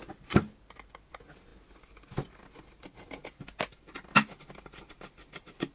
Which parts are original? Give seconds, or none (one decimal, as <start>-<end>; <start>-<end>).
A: 0.0-5.7